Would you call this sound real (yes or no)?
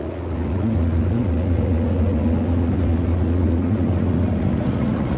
no